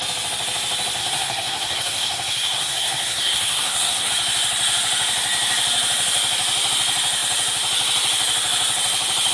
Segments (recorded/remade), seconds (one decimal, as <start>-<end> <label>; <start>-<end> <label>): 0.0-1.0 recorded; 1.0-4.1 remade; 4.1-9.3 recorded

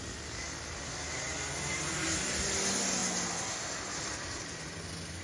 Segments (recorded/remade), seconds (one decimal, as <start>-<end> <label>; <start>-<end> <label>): 0.0-5.2 recorded

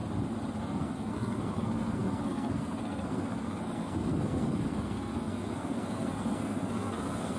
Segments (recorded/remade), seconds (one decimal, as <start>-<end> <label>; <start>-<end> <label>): 0.0-0.6 recorded; 0.6-7.4 remade

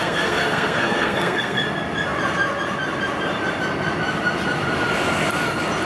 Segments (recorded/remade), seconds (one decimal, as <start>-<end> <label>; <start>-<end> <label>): 0.0-1.6 remade; 1.6-5.9 recorded

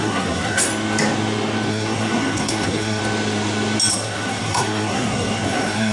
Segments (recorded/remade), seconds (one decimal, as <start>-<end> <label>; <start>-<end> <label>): 0.0-0.7 remade; 0.7-1.7 recorded; 1.7-3.0 remade; 3.0-3.9 recorded; 3.9-5.9 remade

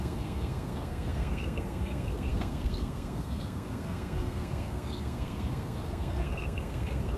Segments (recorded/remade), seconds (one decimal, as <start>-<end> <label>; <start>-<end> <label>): 0.0-7.2 remade

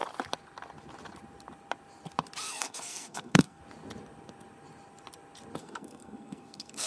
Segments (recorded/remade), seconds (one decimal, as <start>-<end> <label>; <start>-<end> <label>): 0.0-2.4 recorded; 2.4-3.6 remade; 3.6-5.6 recorded; 5.6-6.9 remade